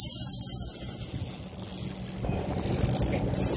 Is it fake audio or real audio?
real